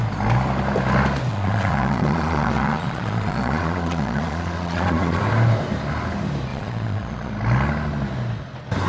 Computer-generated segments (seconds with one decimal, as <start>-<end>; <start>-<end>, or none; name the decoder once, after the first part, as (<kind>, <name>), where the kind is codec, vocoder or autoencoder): 1.3-5.2 (vocoder, Vocos); 6.5-7.3